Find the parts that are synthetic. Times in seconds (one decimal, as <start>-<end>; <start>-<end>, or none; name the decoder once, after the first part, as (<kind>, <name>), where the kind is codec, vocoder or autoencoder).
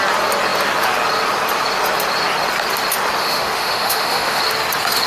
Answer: 3.2-4.4 (autoencoder, DAC-VAE)